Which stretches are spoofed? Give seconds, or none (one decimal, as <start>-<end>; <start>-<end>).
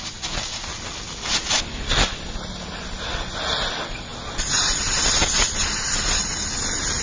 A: none